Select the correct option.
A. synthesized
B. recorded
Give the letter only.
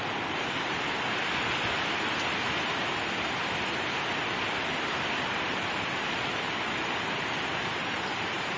B